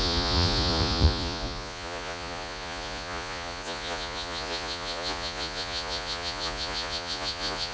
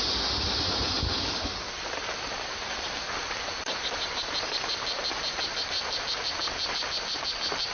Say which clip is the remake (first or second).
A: first